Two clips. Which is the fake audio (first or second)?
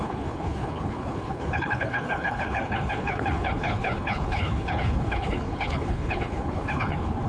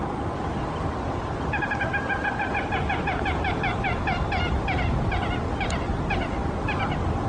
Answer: first